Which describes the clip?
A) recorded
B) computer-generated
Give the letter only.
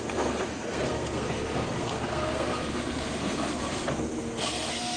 B